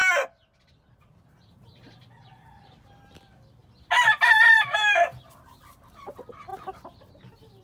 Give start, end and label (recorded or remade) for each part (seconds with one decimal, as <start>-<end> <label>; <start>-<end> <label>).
0.0-0.6 recorded; 0.6-6.5 remade; 6.5-7.1 recorded; 7.1-7.6 remade